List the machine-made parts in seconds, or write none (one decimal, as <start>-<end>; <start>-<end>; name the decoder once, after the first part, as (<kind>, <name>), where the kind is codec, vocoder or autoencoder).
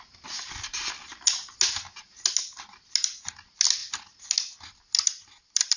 none